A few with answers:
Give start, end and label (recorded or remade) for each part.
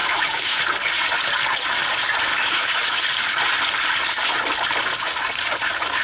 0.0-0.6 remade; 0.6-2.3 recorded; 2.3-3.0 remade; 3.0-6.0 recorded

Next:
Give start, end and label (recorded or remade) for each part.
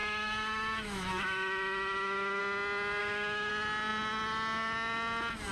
0.0-2.4 remade; 2.4-3.0 recorded; 3.0-3.5 remade; 3.5-5.5 recorded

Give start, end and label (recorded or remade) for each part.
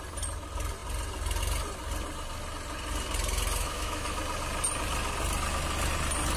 0.0-3.6 recorded; 3.6-4.2 remade; 4.2-6.4 recorded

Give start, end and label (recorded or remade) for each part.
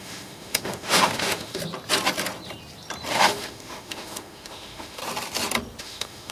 0.0-1.6 remade; 1.6-3.1 recorded; 3.1-5.0 remade; 5.0-5.8 recorded; 5.8-6.3 remade